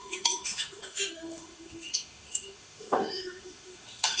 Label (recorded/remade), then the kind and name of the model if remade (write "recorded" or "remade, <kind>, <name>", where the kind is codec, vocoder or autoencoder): remade, autoencoder, DAC-VAE